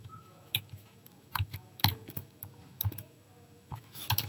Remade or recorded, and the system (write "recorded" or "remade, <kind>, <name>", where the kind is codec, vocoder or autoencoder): remade, autoencoder, DAC-VAE